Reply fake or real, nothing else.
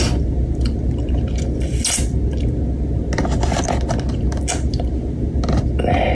real